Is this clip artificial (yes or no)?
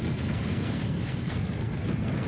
yes